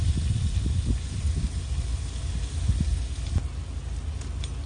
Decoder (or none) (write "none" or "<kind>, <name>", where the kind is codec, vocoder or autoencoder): none